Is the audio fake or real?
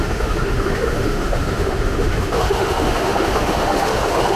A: fake